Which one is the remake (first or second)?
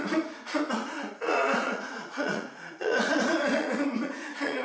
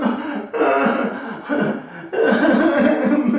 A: first